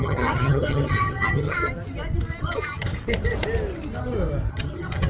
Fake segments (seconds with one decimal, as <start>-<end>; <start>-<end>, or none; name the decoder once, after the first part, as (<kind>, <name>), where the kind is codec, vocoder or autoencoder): 0.0-1.7 (vocoder, HiFi-GAN); 2.4-2.9; 4.5-5.1